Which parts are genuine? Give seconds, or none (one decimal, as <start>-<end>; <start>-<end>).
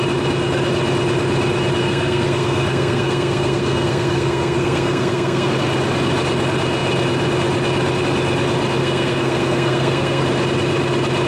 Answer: 0.0-1.8; 5.5-8.8; 10.2-11.3